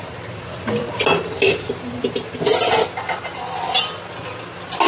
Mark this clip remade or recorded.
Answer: recorded